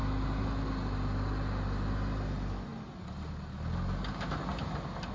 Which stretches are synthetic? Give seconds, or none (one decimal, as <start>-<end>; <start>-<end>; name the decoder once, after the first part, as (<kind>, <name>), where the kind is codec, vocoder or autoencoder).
none